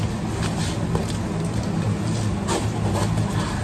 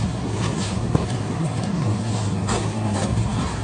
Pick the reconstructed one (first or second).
second